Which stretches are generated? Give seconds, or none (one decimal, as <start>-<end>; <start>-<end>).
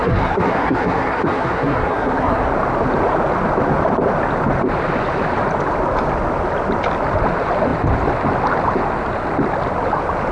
0.0-2.5